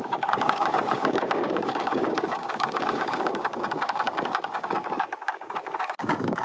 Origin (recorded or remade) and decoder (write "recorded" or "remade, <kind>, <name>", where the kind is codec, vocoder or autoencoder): remade, codec, DAC